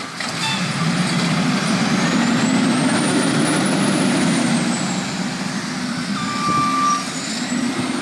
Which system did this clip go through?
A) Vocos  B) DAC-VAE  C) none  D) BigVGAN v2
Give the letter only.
C